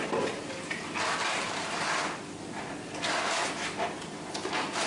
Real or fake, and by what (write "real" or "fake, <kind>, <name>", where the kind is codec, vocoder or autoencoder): real